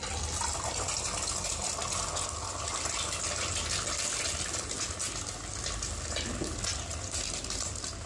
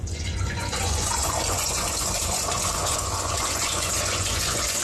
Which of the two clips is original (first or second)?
first